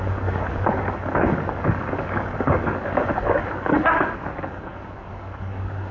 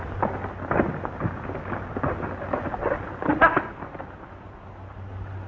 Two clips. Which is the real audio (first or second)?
second